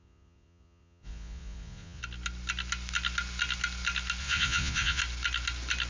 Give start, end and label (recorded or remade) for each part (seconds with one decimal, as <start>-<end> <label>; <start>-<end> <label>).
0.0-2.0 remade; 2.0-4.2 recorded; 4.2-5.0 remade; 5.0-5.9 recorded